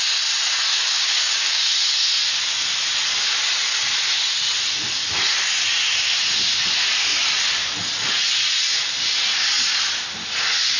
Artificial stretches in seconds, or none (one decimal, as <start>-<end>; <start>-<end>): 0.7-1.6